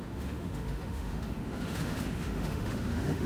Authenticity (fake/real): fake